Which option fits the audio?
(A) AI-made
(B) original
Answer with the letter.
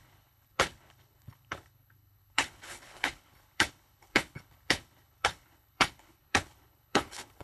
A